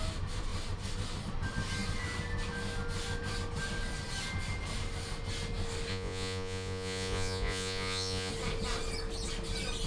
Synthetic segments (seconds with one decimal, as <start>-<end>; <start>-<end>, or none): 5.9-8.3